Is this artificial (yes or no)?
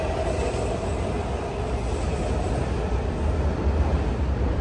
no